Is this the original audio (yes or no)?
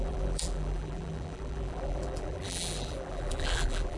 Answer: no